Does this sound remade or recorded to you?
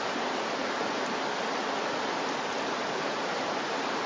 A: recorded